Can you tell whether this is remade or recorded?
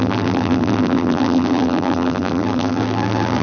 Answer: remade